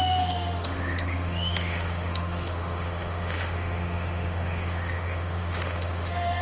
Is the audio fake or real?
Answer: fake